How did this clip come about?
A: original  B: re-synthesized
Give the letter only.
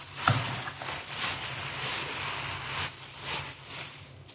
A